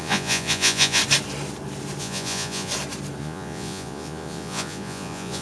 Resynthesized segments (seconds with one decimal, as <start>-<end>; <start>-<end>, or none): 0.0-1.0; 2.0-2.7; 3.2-5.4